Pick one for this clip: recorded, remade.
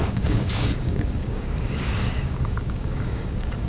remade